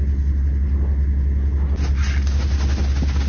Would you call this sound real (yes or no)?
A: yes